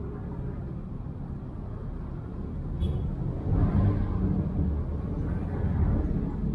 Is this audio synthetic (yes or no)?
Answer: no